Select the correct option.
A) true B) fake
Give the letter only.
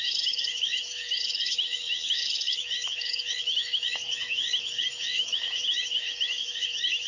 B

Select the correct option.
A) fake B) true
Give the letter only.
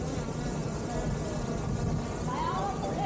B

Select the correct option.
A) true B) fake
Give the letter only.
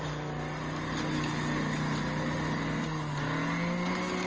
A